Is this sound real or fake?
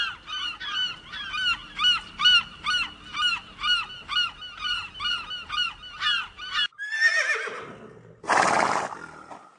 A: real